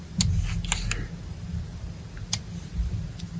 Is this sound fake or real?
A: real